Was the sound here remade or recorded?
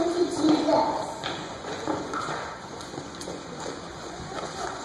remade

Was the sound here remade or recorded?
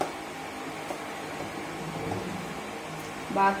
recorded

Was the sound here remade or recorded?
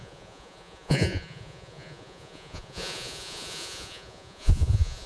remade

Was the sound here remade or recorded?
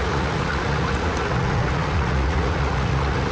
remade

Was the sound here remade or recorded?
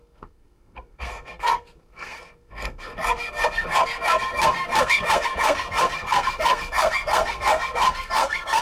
remade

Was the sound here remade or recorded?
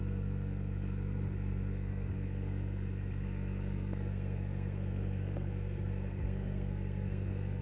remade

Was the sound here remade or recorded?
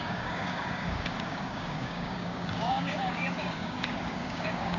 remade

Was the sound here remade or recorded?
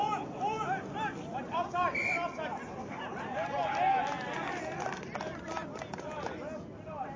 recorded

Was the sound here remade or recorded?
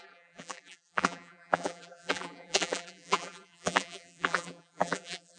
remade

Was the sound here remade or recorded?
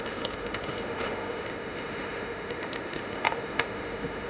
remade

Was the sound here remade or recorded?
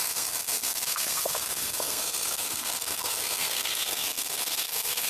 remade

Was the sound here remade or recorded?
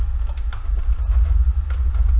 recorded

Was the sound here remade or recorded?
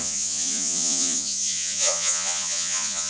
remade